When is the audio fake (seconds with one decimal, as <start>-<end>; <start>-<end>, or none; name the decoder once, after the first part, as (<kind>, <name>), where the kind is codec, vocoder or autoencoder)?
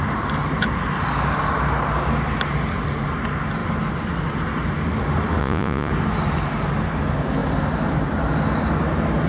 5.4-5.9 (vocoder, Vocos)